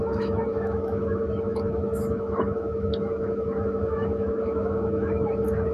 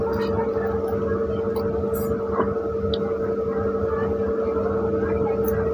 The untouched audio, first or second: second